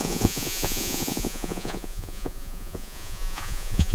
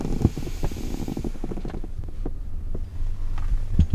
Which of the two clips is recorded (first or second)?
second